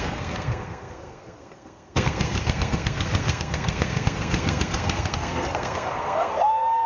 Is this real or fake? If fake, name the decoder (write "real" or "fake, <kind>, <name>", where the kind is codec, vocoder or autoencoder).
fake, codec, SNAC